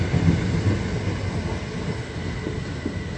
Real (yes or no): yes